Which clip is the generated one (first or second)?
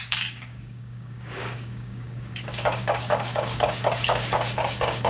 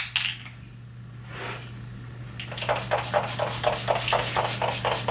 first